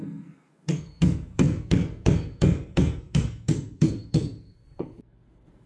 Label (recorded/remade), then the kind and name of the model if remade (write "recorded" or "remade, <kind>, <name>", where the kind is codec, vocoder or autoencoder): remade, codec, SNAC